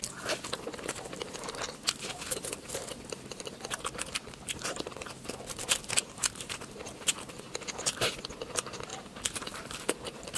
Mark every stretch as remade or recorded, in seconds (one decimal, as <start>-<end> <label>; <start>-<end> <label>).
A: 0.0-8.9 recorded; 8.9-10.4 remade